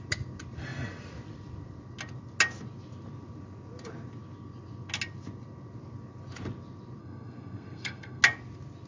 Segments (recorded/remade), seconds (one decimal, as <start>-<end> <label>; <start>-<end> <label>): 0.0-7.0 recorded; 7.0-8.2 remade; 8.2-8.9 recorded